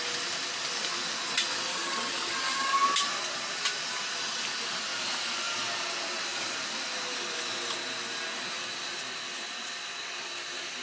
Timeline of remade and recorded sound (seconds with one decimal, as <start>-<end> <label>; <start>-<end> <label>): 0.0-1.7 recorded; 1.7-2.7 remade; 2.7-10.8 recorded